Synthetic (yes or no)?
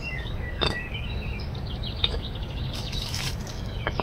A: yes